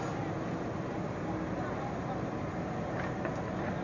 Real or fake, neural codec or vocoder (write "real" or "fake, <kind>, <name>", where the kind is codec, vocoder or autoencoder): real